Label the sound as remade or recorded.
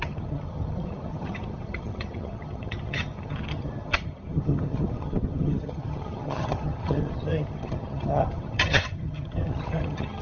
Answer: remade